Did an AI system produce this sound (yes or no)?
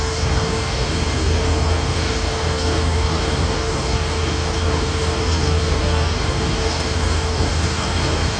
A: yes